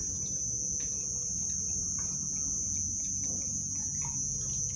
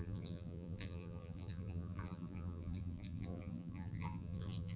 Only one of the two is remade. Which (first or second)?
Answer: second